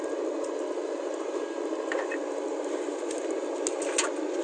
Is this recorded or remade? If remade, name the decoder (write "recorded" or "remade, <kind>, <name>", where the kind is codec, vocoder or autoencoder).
recorded